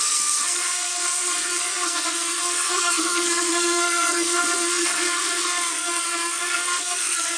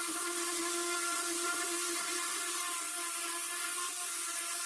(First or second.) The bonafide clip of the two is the second